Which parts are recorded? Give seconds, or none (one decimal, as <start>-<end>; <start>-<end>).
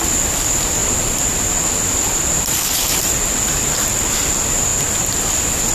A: 0.0-5.7